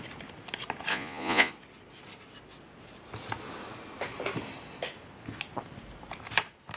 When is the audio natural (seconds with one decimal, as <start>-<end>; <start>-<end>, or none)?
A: 0.0-0.9; 1.5-6.8